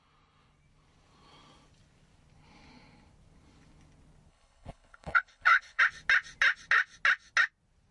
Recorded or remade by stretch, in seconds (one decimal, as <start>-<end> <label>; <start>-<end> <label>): 0.0-4.3 recorded; 4.3-5.8 remade; 5.8-7.9 recorded